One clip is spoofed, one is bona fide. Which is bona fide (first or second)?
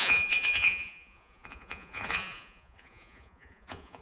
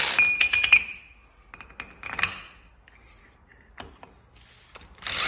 second